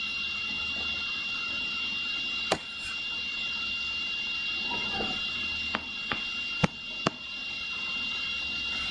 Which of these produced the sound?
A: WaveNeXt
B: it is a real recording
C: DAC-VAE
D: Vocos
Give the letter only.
B